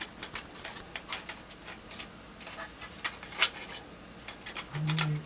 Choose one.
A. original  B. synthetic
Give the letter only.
A